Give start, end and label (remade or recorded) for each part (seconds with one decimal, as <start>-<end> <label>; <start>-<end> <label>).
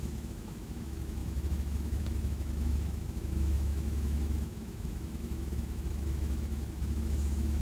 0.0-7.6 remade